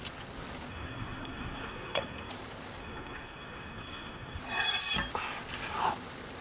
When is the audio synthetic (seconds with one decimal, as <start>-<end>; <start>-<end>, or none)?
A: 0.7-2.3; 2.8-4.4